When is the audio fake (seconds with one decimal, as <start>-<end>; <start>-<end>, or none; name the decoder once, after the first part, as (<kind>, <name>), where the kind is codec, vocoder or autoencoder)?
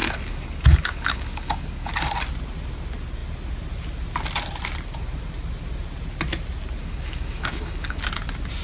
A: 0.0-1.9 (codec, DAC); 6.8-8.0